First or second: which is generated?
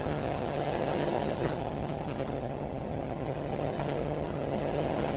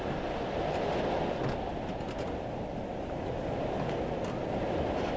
first